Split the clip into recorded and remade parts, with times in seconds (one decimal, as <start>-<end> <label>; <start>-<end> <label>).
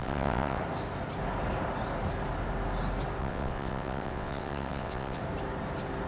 0.0-0.6 remade; 0.6-3.2 recorded; 3.2-5.2 remade; 5.2-6.1 recorded